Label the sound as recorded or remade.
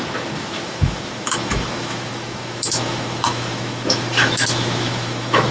remade